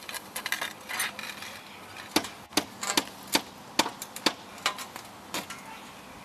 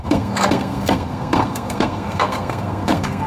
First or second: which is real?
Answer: first